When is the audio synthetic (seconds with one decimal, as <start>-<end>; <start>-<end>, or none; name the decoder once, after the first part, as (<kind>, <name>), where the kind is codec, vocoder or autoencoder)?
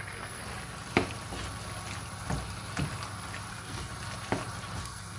0.0-0.4 (codec, SNAC); 3.5-3.9; 4.8-5.2